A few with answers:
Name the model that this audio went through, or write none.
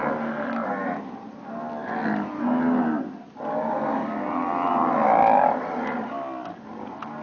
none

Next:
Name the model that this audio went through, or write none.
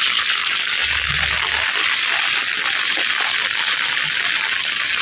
none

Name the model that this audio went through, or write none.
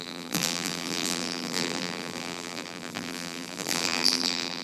vocoder, BigVGAN v2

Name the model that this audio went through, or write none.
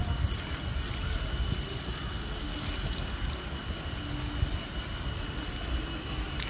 none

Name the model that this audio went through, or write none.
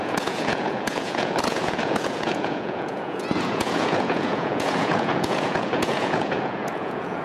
vocoder, Vocos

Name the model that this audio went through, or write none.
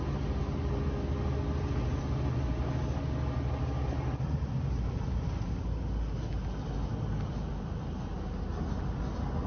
none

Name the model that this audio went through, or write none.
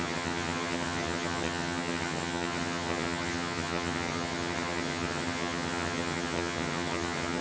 vocoder, HiFi-GAN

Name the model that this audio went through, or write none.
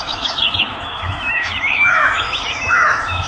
autoencoder, DAC-VAE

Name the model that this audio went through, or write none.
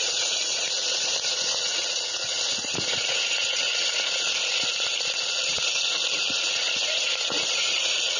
vocoder, Vocos